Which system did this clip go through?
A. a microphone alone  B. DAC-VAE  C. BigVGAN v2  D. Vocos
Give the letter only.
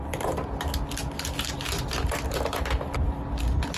A